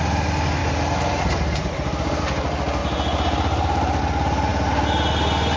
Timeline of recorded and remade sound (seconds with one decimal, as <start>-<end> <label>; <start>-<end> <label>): 0.0-0.6 recorded; 0.6-2.2 remade; 2.2-2.8 recorded; 2.8-4.0 remade; 4.0-5.6 recorded